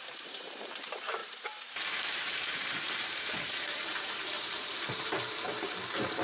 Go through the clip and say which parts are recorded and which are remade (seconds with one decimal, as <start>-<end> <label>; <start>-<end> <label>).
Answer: 0.0-6.2 remade